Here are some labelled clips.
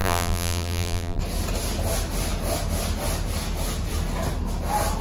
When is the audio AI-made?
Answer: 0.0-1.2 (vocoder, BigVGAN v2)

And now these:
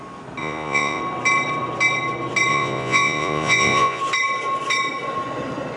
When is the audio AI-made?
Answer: 0.4-1.0 (vocoder, Vocos); 2.5-4.0

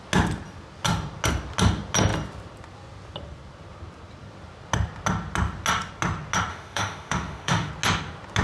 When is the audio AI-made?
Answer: 6.5-7.7 (autoencoder, DAC-VAE)

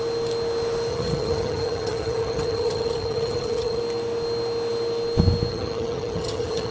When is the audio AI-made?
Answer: 0.9-3.8 (vocoder, HiFi-GAN); 5.5-6.7

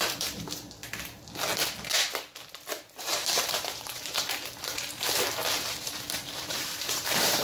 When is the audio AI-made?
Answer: 0.0-0.8 (vocoder, BigVGAN v2); 3.0-7.4

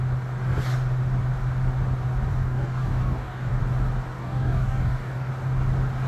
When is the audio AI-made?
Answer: 2.3-3.6 (codec, DAC); 4.2-5.3

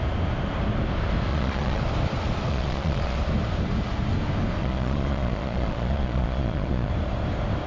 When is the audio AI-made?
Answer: 1.3-1.8 (vocoder, Vocos); 2.5-3.2; 4.6-6.9